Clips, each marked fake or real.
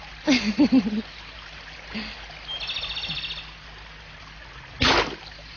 real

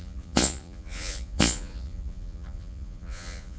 fake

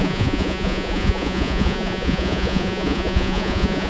fake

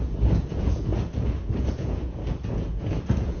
fake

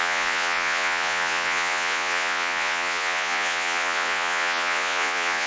fake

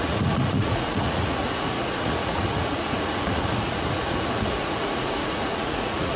fake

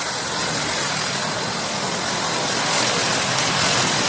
real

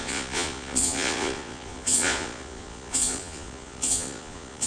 fake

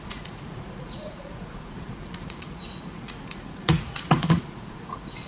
fake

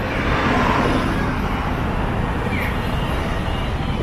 real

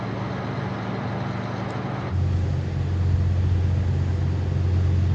real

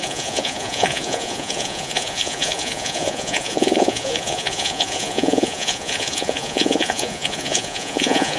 fake